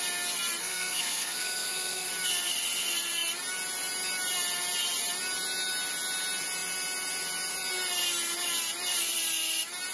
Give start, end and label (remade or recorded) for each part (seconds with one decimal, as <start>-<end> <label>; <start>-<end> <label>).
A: 0.0-0.6 recorded; 0.6-2.1 remade; 2.1-9.9 recorded